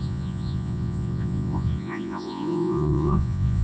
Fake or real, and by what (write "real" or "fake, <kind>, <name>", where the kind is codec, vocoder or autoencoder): fake, vocoder, Vocos